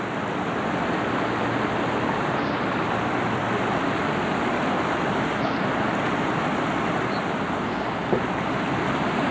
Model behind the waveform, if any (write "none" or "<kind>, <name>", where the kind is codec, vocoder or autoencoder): none